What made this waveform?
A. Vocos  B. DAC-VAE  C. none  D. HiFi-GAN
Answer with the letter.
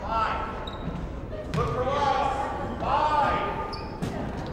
C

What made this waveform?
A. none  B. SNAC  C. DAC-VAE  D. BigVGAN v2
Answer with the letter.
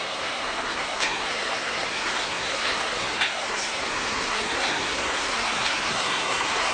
B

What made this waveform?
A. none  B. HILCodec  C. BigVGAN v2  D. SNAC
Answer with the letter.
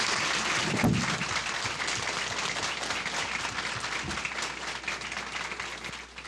A